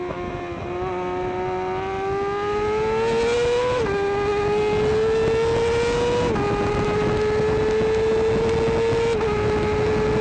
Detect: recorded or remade recorded